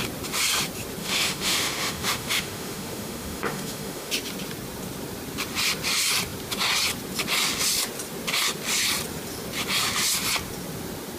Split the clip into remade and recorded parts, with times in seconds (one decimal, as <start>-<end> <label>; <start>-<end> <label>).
0.0-1.0 recorded; 1.0-4.1 remade; 4.1-11.2 recorded